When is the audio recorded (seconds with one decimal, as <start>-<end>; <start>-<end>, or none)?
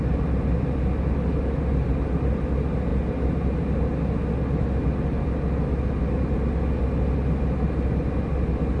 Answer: 0.0-8.8